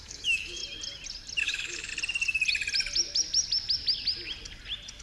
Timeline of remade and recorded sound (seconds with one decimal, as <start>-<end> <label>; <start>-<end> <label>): 0.0-0.6 remade; 0.6-1.4 recorded; 1.4-1.9 remade; 1.9-5.0 recorded